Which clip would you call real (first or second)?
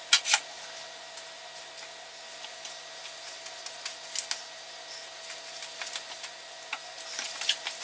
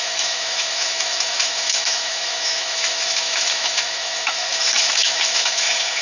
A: first